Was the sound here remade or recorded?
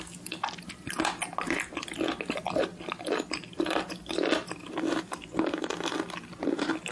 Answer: recorded